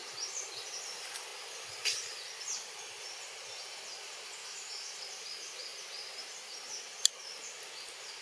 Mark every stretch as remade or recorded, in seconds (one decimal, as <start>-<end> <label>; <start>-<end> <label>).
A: 0.0-4.4 recorded; 4.4-5.0 remade; 5.0-8.2 recorded